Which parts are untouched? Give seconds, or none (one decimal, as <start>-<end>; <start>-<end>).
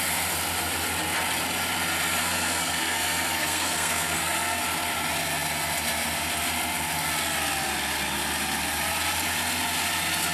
0.0-2.2; 4.6-10.3